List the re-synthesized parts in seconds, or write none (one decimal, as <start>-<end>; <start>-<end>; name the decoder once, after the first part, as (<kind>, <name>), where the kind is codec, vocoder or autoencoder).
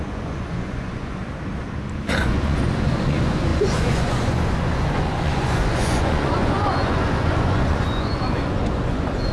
0.0-1.2 (vocoder, Vocos); 2.2-9.3